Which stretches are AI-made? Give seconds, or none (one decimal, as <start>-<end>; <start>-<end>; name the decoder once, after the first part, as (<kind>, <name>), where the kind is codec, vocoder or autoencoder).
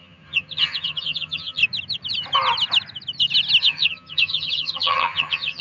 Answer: 0.0-1.6 (vocoder, HiFi-GAN); 3.6-5.6